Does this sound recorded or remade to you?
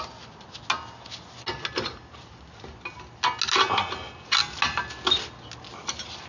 recorded